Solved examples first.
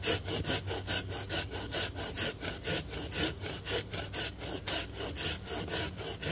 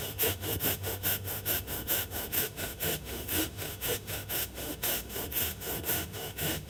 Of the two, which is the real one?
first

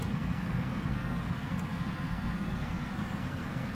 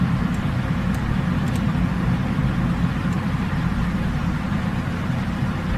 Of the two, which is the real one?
second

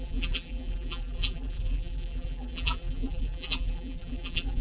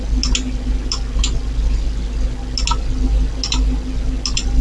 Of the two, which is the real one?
second